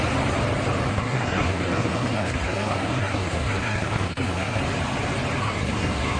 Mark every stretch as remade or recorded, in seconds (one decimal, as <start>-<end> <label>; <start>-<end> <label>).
0.0-0.9 recorded; 0.9-4.6 remade; 4.6-5.4 recorded; 5.4-6.2 remade